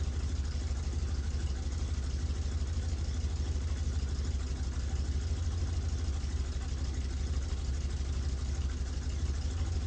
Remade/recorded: recorded